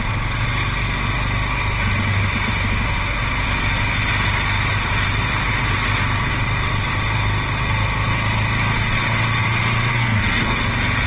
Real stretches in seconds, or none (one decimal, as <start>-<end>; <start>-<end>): 0.0-9.9; 10.6-11.1